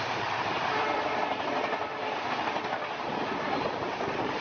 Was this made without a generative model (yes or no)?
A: no